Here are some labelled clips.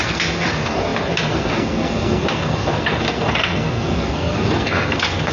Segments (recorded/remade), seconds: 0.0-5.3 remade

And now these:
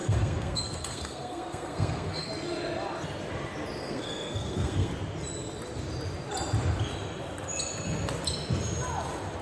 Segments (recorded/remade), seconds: 0.0-2.3 remade; 2.3-3.8 recorded; 3.8-4.9 remade; 4.9-9.4 recorded